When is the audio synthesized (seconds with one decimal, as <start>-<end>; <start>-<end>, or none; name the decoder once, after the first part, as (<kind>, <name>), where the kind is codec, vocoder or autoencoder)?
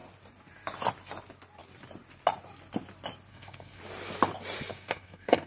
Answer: 3.3-3.8 (codec, SNAC); 4.7-5.5